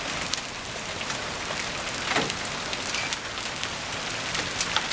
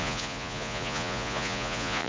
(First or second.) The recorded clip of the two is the first